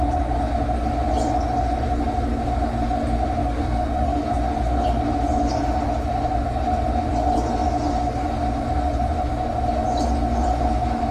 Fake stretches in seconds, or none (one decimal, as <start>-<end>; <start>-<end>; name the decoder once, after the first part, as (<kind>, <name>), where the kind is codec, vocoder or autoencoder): 3.4-4.3 (codec, DAC)